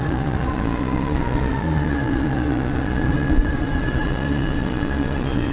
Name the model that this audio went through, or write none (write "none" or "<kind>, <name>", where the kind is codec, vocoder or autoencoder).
vocoder, Vocos